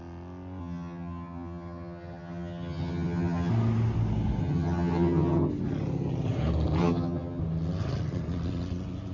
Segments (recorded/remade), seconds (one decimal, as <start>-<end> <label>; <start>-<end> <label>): 0.0-0.6 recorded; 0.6-3.5 remade; 3.5-4.4 recorded; 4.4-5.5 remade; 5.5-6.8 recorded; 6.8-7.4 remade; 7.4-9.1 recorded